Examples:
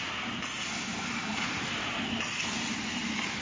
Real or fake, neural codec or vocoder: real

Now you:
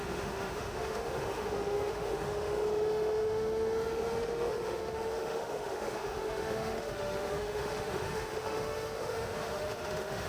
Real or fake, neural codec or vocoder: fake, autoencoder, DAC-VAE